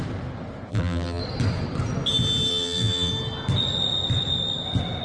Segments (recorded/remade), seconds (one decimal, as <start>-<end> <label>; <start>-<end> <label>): 0.0-0.7 recorded; 0.7-1.2 remade; 1.2-2.5 recorded; 2.5-3.1 remade; 3.1-5.0 recorded